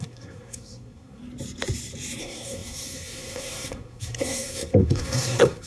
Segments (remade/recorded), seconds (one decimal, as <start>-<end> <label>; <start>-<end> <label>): 0.0-1.2 remade; 1.2-2.2 recorded; 2.2-5.7 remade